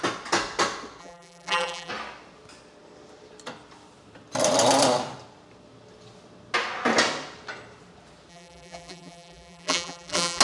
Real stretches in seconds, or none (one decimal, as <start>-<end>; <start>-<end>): 0.0-1.0; 1.9-8.3